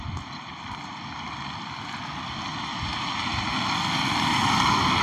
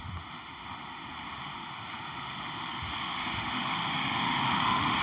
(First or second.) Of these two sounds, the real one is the first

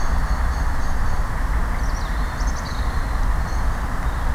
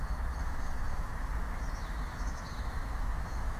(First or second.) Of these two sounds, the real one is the first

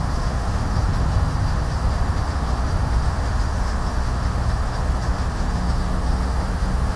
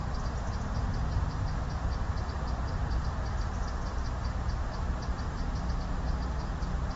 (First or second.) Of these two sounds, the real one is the second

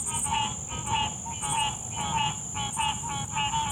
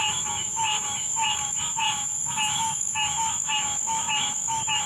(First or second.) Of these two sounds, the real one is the first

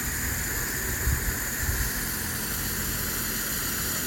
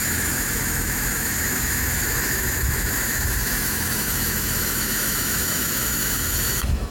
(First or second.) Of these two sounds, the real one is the first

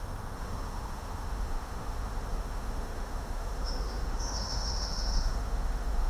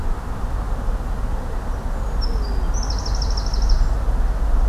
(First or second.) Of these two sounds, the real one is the second